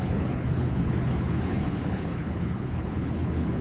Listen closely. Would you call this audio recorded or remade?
remade